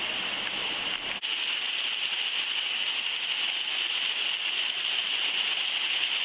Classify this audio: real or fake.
real